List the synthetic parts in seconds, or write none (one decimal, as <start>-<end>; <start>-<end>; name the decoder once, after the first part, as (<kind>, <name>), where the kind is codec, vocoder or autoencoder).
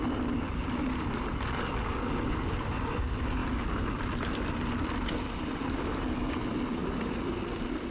none